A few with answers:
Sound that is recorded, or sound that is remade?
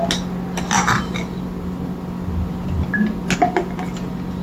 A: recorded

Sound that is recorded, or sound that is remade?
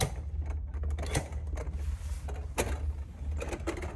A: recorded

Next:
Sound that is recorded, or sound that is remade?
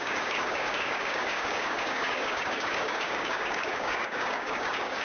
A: remade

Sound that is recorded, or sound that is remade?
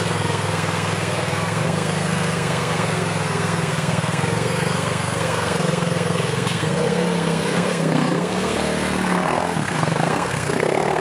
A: remade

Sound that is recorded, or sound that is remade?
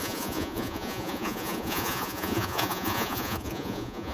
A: remade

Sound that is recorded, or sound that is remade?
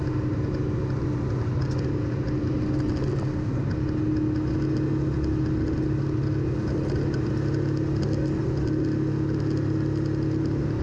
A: recorded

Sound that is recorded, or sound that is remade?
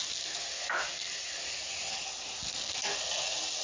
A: recorded